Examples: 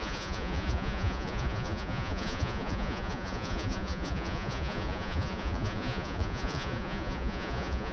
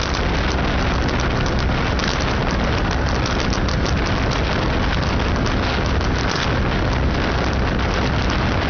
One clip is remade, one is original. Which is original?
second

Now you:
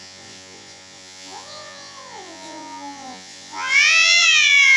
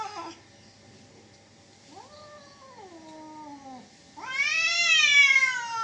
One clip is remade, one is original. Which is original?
second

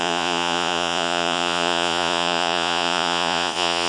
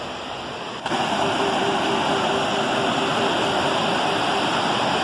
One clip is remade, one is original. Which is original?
second